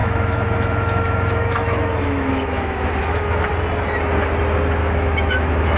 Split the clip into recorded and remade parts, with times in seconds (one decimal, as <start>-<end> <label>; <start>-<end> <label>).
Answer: 0.0-3.5 remade; 3.5-4.8 recorded; 4.8-5.8 remade